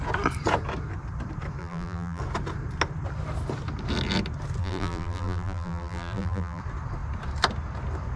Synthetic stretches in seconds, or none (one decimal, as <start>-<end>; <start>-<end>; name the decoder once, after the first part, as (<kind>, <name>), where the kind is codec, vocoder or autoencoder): 1.6-2.2 (vocoder, BigVGAN v2); 4.6-6.6